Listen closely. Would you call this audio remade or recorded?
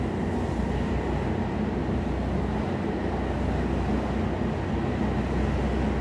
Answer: recorded